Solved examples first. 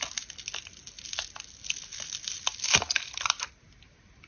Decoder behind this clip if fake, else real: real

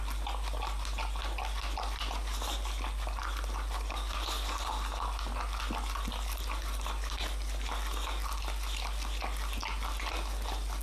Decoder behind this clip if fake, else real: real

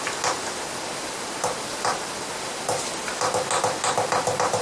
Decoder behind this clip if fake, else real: real